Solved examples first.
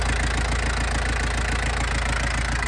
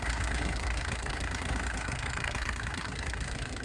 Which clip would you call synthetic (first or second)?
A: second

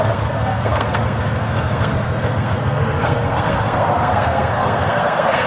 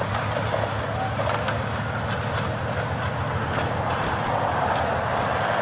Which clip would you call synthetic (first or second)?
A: first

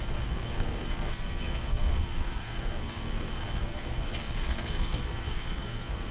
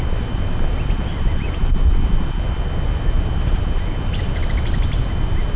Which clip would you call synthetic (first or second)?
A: first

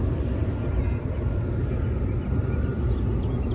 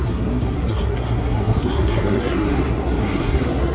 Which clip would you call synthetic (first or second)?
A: second